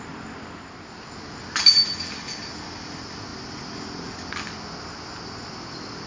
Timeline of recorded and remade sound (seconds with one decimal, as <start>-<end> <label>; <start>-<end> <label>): 0.0-6.1 recorded

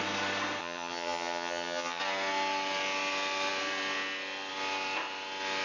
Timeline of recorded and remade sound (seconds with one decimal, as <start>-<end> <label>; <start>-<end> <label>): 0.0-0.6 recorded; 0.6-2.0 remade; 2.0-5.6 recorded

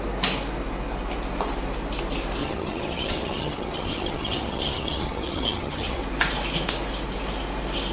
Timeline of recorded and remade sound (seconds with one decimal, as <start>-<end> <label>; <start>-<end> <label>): 0.0-2.4 recorded; 2.4-6.0 remade; 6.0-7.9 recorded

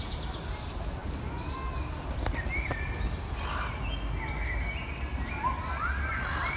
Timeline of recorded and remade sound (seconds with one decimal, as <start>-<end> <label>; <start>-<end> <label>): 0.0-6.6 recorded

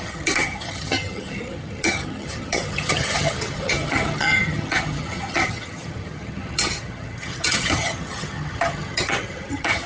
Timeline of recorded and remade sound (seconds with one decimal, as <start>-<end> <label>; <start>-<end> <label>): 0.0-9.9 remade

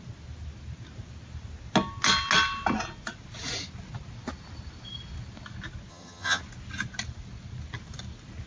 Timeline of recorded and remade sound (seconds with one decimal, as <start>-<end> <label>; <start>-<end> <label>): 0.0-5.9 recorded; 5.9-6.4 remade; 6.4-8.5 recorded

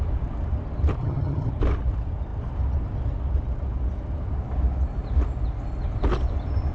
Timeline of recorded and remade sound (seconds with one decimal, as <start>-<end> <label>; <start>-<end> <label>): 0.0-1.0 recorded; 1.0-1.5 remade; 1.5-6.7 recorded

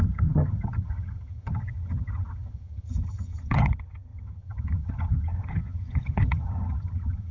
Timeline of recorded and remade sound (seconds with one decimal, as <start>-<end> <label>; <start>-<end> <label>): 0.0-7.3 remade